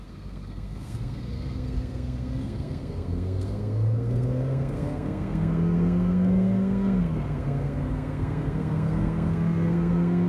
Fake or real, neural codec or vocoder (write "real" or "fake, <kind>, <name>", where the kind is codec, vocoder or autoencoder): fake, codec, SNAC